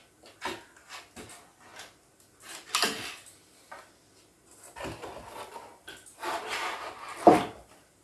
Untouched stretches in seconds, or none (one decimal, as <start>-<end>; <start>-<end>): 0.0-8.0